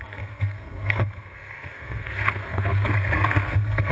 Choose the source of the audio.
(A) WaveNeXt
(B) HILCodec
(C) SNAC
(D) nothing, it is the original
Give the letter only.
C